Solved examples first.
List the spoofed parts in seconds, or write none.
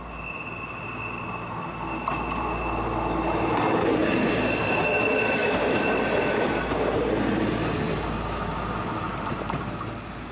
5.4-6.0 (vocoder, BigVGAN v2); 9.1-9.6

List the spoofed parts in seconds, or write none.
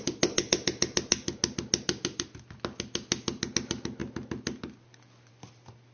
none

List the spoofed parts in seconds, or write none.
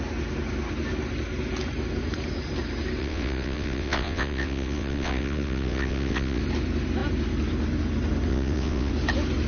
3.0-6.4 (vocoder, WaveNeXt); 8.3-8.9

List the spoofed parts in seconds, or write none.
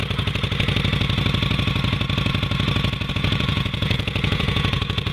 3.1-5.1 (vocoder, Vocos)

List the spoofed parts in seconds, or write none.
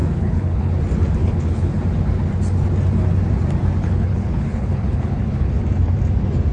0.0-0.7 (codec, HILCodec); 1.2-1.8; 3.8-5.6